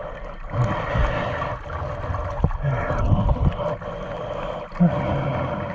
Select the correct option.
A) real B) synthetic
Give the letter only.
A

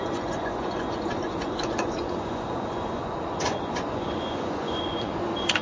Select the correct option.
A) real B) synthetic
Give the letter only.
B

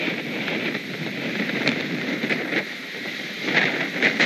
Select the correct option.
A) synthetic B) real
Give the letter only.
A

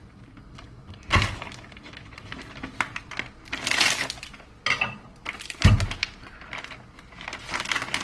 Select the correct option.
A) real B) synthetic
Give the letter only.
A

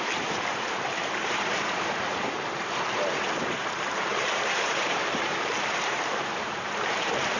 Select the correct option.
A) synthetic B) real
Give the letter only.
A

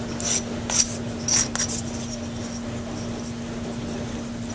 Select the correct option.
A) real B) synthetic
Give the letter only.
A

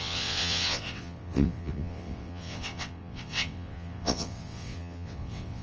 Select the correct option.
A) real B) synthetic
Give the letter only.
B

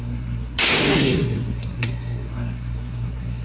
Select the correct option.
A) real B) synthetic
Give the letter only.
B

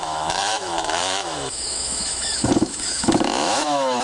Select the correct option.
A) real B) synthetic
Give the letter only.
B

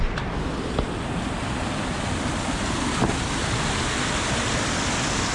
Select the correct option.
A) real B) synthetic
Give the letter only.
A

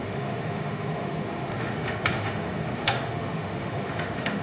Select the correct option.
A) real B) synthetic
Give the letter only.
B